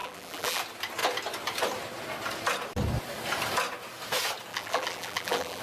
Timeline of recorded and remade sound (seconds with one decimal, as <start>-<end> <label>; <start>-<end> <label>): 0.0-0.6 remade; 0.6-4.5 recorded; 4.5-5.6 remade